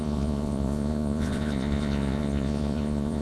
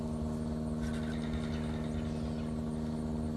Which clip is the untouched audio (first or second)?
second